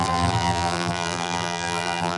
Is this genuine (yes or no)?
no